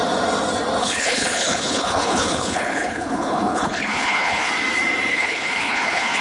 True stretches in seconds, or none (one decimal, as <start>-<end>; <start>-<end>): 0.0-0.8; 4.5-5.1